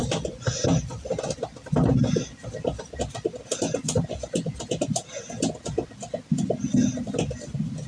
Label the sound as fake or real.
real